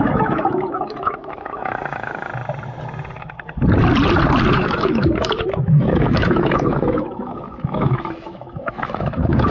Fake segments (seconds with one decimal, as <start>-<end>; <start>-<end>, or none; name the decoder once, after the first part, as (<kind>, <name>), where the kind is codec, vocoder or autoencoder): 0.0-2.3 (autoencoder, DAC-VAE); 4.5-9.5